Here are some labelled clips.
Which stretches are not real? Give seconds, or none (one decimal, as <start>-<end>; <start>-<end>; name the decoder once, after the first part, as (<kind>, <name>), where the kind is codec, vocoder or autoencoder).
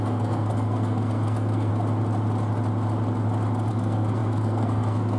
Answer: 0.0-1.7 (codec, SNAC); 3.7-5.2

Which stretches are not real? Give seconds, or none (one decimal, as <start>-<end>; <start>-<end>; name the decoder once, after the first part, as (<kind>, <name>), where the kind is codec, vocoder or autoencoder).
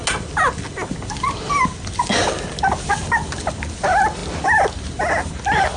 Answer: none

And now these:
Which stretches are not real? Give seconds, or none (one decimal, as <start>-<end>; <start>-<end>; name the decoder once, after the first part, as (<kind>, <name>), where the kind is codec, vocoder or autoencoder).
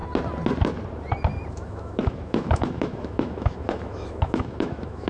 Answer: 1.5-5.1 (autoencoder, DAC-VAE)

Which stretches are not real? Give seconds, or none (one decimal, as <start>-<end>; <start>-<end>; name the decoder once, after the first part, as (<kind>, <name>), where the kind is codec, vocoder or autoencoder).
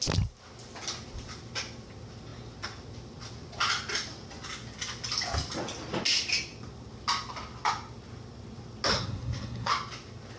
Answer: 8.9-9.7 (codec, SNAC)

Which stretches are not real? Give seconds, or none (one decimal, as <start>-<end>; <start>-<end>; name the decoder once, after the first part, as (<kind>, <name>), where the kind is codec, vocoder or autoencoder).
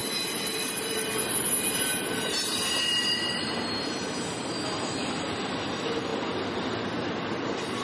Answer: none